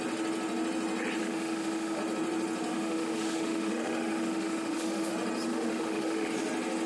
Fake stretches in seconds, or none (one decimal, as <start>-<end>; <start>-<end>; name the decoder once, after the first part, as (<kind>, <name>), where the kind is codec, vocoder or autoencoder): 1.2-2.0 (autoencoder, DAC-VAE); 2.7-5.1; 5.5-6.3